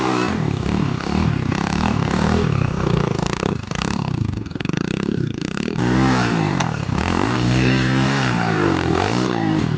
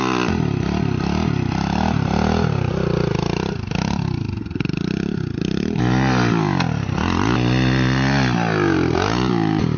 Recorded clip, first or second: second